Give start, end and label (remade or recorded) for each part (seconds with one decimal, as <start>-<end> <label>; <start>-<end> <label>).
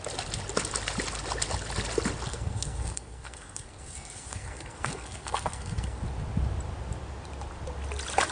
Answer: 0.0-2.3 recorded; 2.3-6.0 remade; 6.0-8.3 recorded